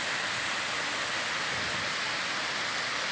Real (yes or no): yes